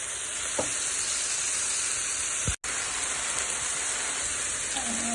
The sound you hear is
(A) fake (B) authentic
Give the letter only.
B